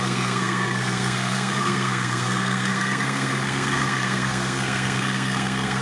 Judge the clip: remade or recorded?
remade